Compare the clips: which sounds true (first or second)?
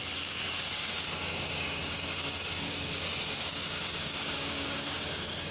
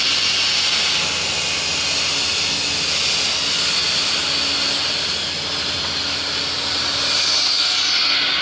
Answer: second